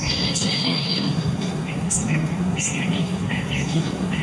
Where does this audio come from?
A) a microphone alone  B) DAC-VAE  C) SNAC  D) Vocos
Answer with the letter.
C